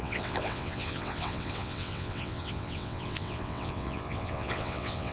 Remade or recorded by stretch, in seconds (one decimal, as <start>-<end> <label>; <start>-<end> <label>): 0.0-5.1 remade